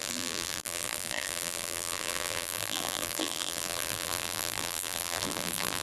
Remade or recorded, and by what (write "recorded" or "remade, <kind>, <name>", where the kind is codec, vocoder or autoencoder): remade, vocoder, BigVGAN v2